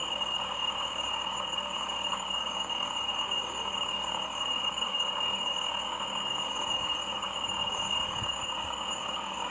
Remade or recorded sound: remade